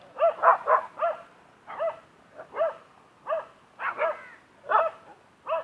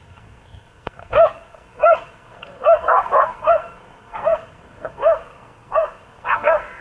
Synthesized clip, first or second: second